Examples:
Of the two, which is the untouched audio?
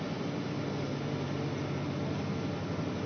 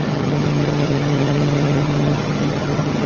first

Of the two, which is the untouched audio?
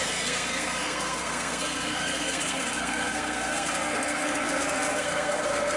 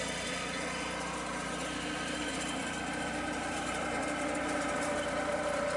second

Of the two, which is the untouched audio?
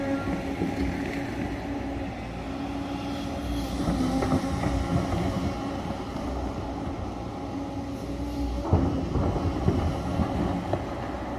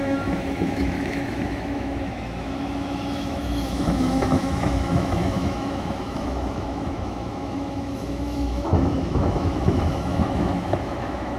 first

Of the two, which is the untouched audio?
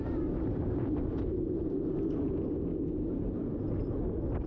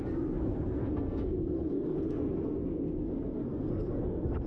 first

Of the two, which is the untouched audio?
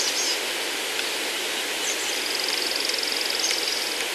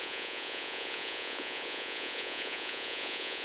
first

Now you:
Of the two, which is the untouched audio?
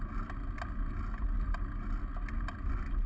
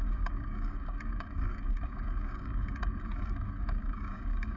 first